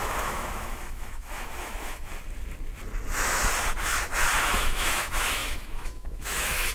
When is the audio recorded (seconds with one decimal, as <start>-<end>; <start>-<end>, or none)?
2.1-4.4